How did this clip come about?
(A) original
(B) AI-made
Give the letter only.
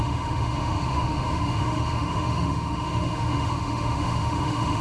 B